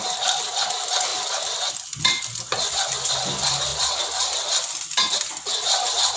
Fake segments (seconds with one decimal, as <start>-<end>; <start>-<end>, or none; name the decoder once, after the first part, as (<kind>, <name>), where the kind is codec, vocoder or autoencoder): none